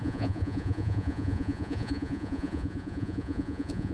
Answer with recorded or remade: remade